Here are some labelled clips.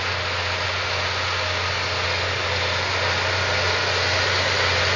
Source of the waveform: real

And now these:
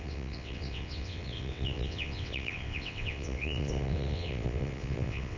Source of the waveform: fake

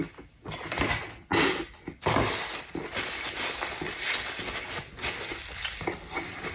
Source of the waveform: real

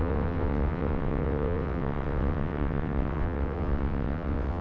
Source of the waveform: fake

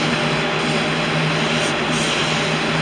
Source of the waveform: real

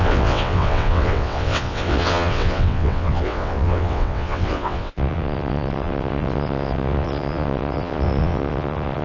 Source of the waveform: fake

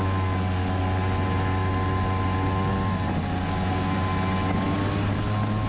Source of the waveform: real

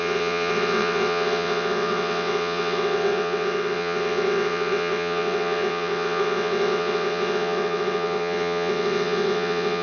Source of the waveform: fake